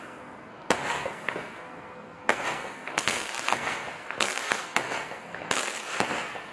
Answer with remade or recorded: remade